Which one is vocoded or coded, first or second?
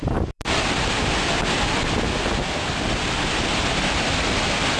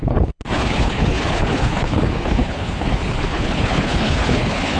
second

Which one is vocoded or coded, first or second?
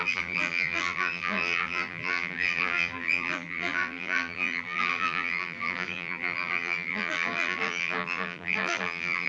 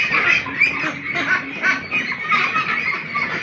first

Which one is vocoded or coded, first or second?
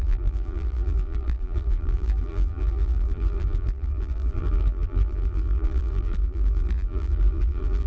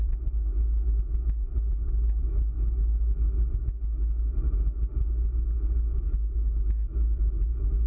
first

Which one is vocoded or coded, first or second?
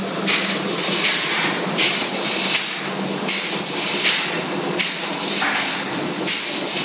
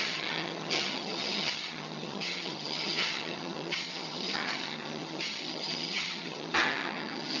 second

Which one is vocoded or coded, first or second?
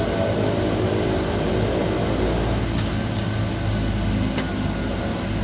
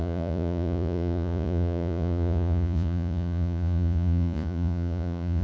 second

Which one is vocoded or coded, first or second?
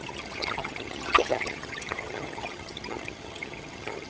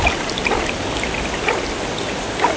first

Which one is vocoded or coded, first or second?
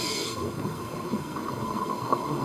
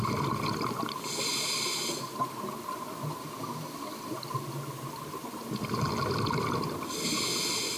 first